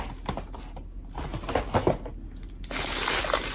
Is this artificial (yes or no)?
no